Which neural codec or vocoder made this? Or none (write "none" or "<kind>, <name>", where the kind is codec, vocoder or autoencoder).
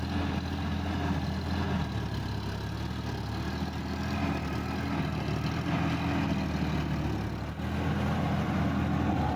none